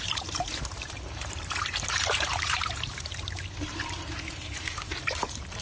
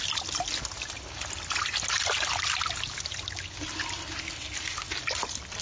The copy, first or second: first